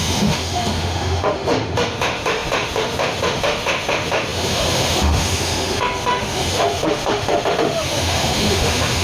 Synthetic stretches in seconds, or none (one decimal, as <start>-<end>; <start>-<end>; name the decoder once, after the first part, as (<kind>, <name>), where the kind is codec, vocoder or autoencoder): 0.0-9.0 (autoencoder, DAC-VAE)